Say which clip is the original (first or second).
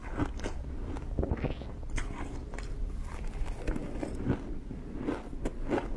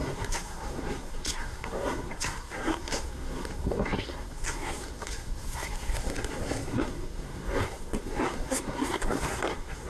first